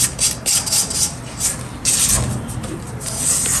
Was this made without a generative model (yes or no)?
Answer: yes